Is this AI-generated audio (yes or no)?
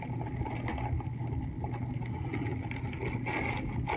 no